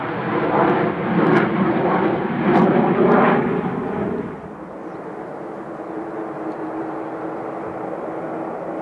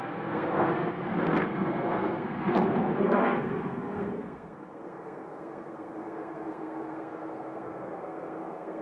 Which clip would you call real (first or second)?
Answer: first